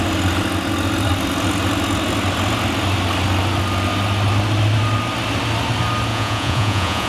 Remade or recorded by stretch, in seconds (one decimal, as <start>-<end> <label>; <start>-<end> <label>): 0.0-6.1 recorded; 6.1-7.1 remade